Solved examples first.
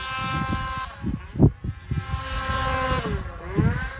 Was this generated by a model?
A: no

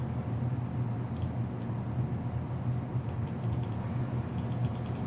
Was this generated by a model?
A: no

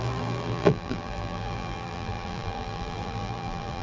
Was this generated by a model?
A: yes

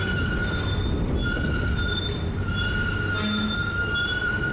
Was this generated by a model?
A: no